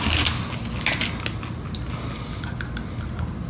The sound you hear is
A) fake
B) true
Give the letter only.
B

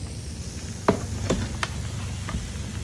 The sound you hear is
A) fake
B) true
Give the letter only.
B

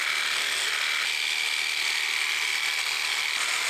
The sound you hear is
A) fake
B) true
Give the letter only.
B